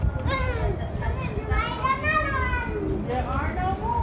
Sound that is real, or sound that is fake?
real